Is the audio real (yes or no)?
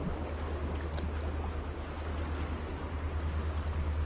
yes